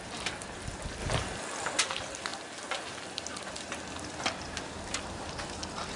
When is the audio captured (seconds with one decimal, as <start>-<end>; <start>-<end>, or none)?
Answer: 0.0-6.0